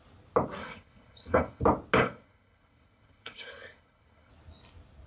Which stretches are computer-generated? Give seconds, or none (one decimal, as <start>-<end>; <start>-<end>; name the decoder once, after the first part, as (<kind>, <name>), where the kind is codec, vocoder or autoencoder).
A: 0.6-1.6 (codec, HILCodec); 2.0-4.3